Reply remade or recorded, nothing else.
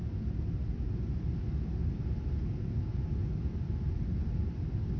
recorded